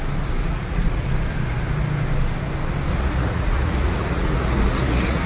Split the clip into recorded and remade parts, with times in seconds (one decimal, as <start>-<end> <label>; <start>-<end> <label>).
0.0-0.4 recorded; 0.4-1.1 remade; 1.1-2.9 recorded; 2.9-5.3 remade